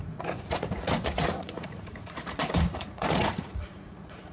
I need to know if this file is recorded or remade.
remade